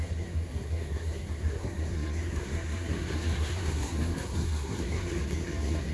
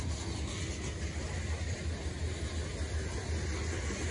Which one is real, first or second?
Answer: second